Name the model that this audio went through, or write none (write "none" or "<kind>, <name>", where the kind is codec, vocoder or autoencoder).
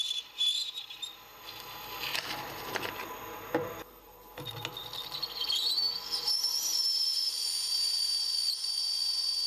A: none